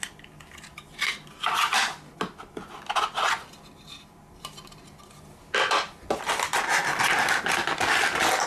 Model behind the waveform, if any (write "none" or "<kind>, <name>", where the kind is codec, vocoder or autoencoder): none